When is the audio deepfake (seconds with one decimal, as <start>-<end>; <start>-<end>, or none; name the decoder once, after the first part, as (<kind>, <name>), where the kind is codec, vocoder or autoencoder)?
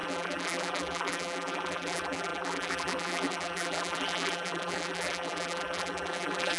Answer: 0.0-6.6 (vocoder, BigVGAN v2)